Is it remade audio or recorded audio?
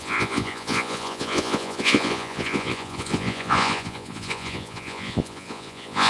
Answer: remade